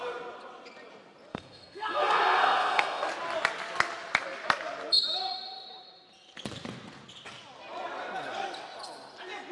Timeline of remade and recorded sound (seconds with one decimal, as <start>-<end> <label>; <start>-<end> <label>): 0.0-1.3 recorded; 1.3-3.1 remade; 3.1-9.5 recorded

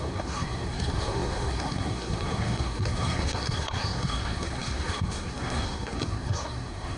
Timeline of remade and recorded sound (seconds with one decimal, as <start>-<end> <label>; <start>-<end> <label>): 0.0-7.0 remade

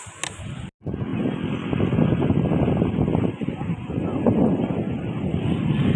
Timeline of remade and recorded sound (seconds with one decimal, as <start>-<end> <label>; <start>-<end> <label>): 0.0-6.0 recorded

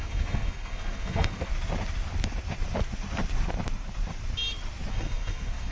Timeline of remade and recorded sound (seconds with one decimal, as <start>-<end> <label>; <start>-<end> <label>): 0.0-1.5 remade; 1.5-4.9 recorded; 4.9-5.7 remade

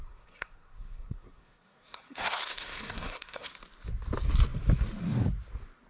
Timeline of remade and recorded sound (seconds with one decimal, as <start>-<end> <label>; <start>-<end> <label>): 0.0-3.5 remade; 3.5-5.9 recorded

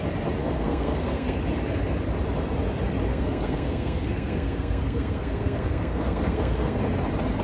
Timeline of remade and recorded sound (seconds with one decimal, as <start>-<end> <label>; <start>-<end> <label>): 0.0-0.4 recorded; 0.4-1.4 remade; 1.4-3.1 recorded; 3.1-6.8 remade; 6.8-7.4 recorded

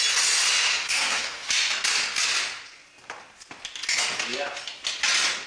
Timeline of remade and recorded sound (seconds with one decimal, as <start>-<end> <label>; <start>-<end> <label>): 0.0-0.7 recorded; 0.7-1.5 remade; 1.5-5.5 recorded